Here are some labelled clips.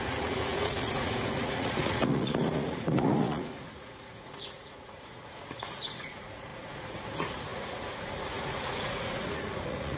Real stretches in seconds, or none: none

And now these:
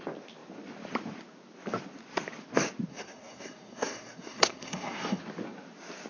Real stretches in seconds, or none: 0.0-2.9; 5.2-6.1

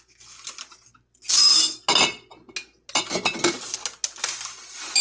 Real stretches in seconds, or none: 0.0-5.0

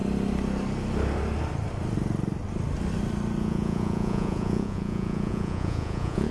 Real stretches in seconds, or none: 0.0-3.4

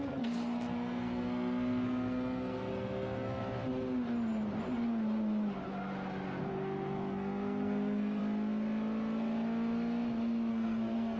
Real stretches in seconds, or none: 3.4-6.5; 8.2-10.5

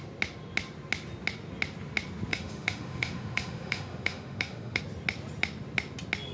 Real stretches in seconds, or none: 0.0-2.3; 4.8-6.3

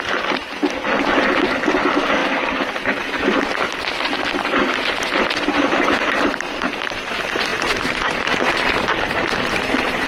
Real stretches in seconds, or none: 0.6-1.6; 2.2-5.2

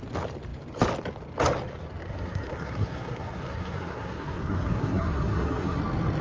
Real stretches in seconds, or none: 0.0-2.1; 5.8-6.2